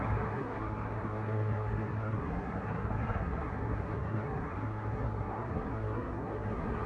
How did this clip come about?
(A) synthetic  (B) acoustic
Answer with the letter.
A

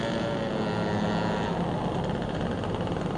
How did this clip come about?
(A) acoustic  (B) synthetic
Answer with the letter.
A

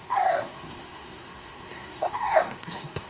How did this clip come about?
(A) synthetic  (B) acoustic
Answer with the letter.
A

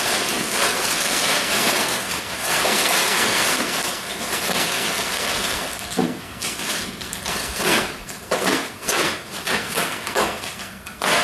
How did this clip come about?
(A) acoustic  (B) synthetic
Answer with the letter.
B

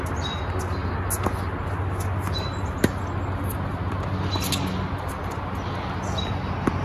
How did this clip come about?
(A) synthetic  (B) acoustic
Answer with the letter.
B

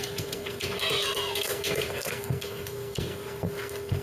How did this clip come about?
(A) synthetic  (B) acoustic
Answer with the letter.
A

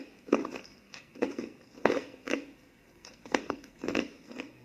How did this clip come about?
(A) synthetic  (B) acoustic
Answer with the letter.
A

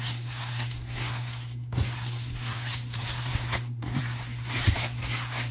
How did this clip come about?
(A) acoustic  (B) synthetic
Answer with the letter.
B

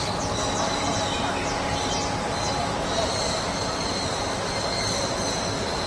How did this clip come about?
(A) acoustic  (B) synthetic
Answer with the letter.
A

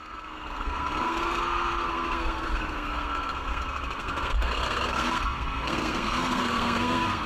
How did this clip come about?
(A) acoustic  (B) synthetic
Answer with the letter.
B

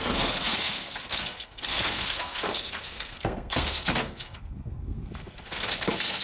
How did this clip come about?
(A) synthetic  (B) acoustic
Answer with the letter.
A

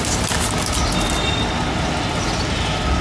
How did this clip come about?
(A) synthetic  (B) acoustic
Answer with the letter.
B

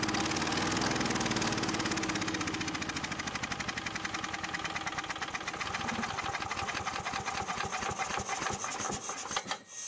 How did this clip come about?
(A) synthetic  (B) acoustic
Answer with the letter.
B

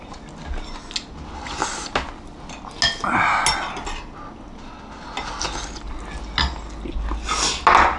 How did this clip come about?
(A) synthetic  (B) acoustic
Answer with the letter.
B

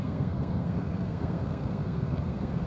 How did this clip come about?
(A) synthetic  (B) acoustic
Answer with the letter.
A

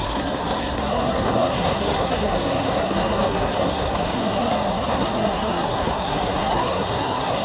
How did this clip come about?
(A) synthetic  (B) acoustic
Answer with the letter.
A